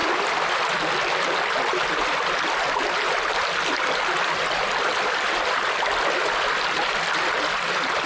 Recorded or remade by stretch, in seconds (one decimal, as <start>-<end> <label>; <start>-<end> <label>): 0.0-8.1 recorded